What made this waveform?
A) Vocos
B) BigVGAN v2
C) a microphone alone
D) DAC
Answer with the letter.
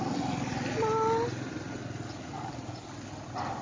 C